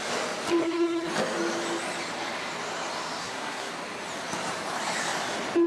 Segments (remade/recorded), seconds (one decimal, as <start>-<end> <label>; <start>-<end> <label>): 0.0-0.6 recorded; 0.6-1.1 remade; 1.1-3.2 recorded; 3.2-3.7 remade; 3.7-5.7 recorded